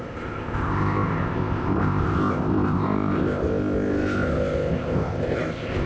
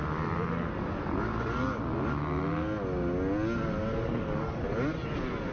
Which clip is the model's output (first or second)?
first